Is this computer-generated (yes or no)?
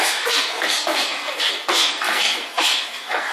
yes